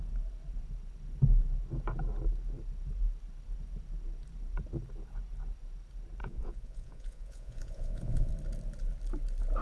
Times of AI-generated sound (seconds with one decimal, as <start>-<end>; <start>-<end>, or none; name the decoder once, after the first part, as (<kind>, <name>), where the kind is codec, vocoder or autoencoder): 6.2-8.3 (vocoder, Vocos)